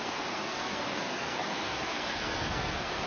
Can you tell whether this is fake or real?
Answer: fake